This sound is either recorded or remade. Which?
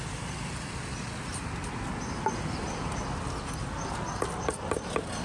recorded